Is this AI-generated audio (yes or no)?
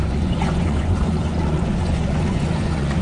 yes